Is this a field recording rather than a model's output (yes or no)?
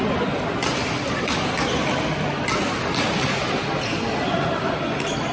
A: yes